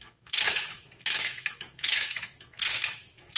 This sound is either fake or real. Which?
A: fake